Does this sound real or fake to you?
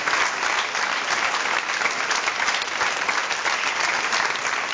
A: real